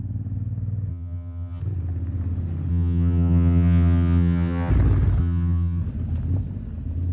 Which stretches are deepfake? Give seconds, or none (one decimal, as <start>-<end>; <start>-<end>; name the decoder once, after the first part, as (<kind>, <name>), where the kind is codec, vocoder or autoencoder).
0.9-1.6 (vocoder, HiFi-GAN); 2.7-4.7; 5.2-5.8